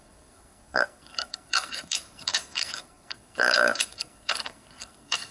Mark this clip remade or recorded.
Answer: remade